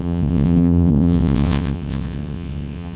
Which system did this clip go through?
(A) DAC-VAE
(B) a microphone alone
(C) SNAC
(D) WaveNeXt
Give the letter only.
D